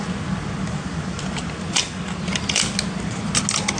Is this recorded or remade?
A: recorded